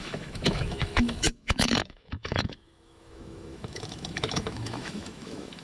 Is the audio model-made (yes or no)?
yes